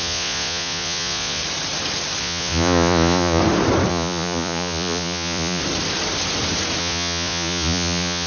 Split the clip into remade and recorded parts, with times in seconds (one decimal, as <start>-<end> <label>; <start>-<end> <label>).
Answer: 0.0-1.4 remade; 1.4-2.2 recorded; 2.2-3.4 remade; 3.4-3.9 recorded; 3.9-5.6 remade; 5.6-6.8 recorded; 6.8-8.3 remade